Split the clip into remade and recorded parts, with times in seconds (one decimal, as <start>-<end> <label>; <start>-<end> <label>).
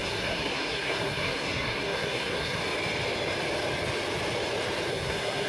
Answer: 0.0-2.6 remade; 2.6-4.9 recorded; 4.9-5.5 remade